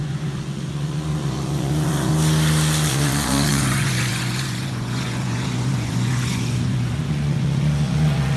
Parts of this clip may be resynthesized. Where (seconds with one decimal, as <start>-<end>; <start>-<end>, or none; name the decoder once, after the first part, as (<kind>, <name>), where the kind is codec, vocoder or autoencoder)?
0.0-2.1 (vocoder, Vocos); 2.9-8.4